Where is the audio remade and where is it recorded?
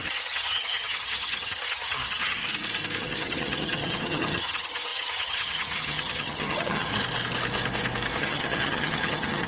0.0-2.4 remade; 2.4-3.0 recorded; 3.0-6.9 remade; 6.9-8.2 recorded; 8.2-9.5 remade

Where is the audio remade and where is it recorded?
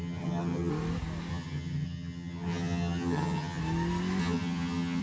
0.0-0.7 remade; 0.7-1.3 recorded; 1.3-3.6 remade; 3.6-4.2 recorded; 4.2-5.0 remade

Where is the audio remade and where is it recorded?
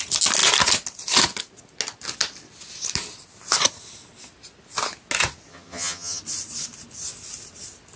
0.0-5.5 recorded; 5.5-6.2 remade; 6.2-8.0 recorded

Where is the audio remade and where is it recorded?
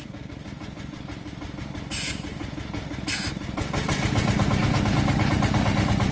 0.0-6.1 recorded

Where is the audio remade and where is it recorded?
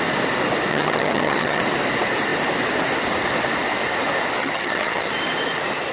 0.0-0.7 recorded; 0.7-1.6 remade; 1.6-4.4 recorded; 4.4-5.1 remade; 5.1-5.9 recorded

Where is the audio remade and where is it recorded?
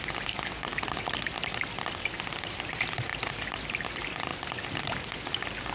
0.0-5.7 recorded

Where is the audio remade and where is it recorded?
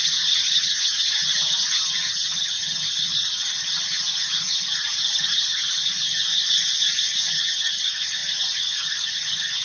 0.0-6.3 remade; 6.3-7.3 recorded; 7.3-9.6 remade